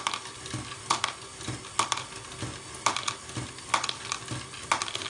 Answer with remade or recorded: recorded